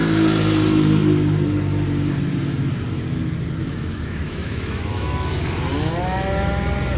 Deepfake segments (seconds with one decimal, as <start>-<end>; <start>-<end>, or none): 3.6-5.4